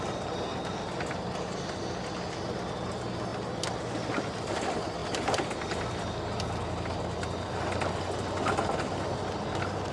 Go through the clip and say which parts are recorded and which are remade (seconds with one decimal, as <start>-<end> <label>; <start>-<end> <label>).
0.0-3.3 recorded; 3.3-3.8 remade; 3.8-5.0 recorded; 5.0-6.0 remade; 6.0-9.9 recorded